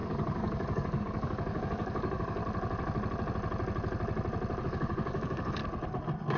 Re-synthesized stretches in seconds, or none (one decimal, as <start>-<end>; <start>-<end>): 0.0-2.4; 4.6-5.6